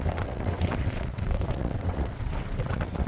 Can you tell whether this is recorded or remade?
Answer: remade